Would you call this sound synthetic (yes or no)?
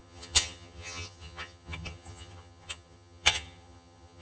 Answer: yes